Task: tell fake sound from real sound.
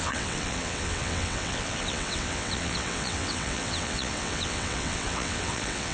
fake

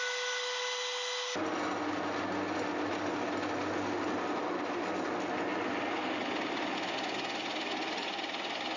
real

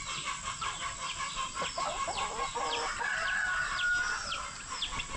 real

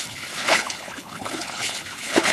fake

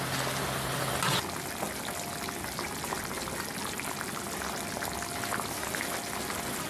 real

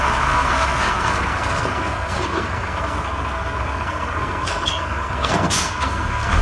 fake